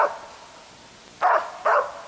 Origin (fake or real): real